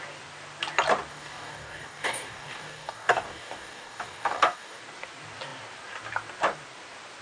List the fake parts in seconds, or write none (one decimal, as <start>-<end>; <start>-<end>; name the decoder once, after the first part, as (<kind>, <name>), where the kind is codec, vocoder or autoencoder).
1.1-4.8 (codec, DAC)